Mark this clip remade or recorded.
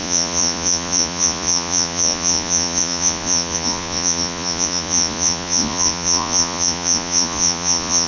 remade